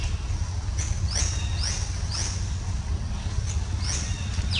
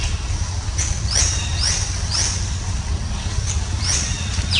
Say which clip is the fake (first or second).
second